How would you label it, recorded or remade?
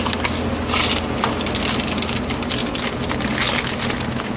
recorded